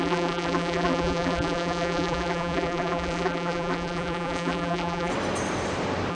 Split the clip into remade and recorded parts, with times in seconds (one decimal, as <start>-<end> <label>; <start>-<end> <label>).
0.0-5.1 remade; 5.1-6.1 recorded